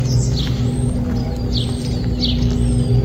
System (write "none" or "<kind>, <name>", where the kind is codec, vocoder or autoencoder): none